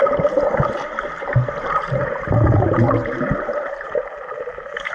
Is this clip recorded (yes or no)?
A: no